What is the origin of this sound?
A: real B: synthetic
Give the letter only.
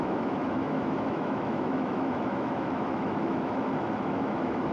B